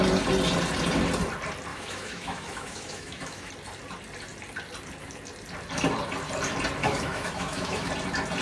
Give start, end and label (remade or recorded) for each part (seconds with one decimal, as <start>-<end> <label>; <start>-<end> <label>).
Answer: 0.0-1.7 recorded; 1.7-3.5 remade; 3.5-6.8 recorded; 6.8-7.9 remade; 7.9-8.4 recorded